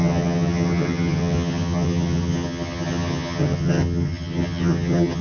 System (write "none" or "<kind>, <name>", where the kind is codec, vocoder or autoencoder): vocoder, HiFi-GAN